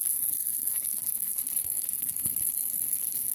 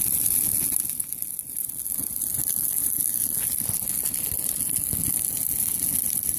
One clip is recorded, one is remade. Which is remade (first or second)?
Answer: first